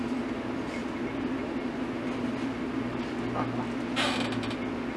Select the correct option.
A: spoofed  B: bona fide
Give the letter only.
B